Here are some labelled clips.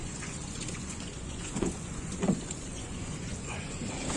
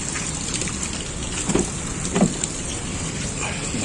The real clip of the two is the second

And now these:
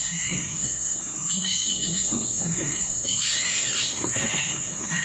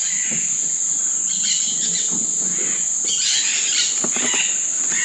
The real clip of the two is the second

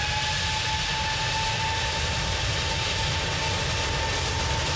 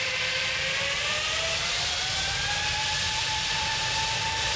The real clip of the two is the first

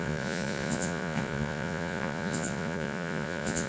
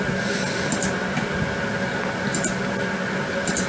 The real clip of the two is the second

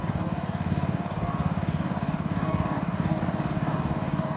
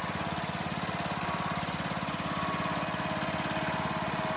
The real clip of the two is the second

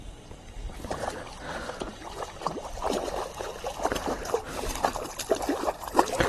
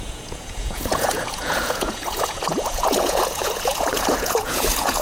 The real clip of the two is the first